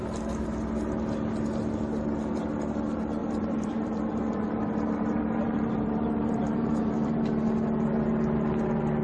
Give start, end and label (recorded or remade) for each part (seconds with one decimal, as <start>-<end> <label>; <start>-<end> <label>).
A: 0.0-3.2 recorded; 3.2-7.2 remade; 7.2-9.0 recorded